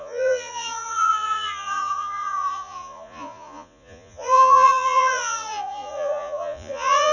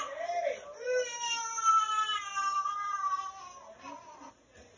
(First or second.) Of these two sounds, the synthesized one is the first